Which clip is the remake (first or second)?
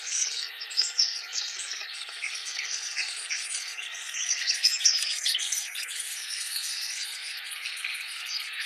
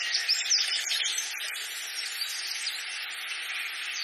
first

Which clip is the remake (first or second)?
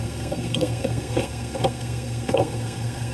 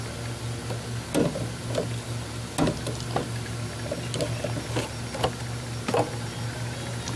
first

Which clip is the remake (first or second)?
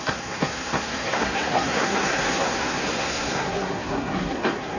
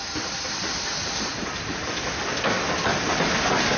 first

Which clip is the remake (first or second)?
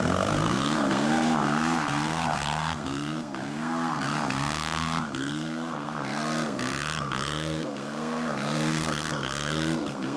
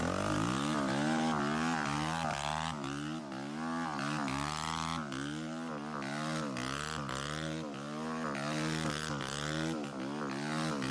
first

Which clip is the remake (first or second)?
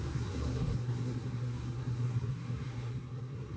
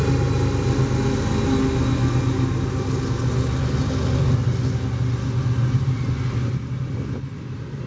first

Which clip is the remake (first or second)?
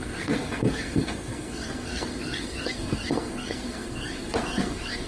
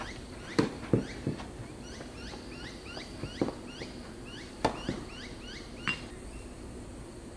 first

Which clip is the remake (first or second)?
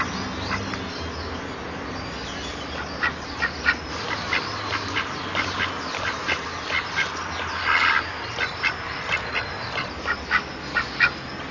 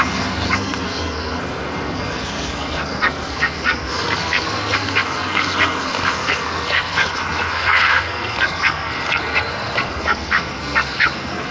second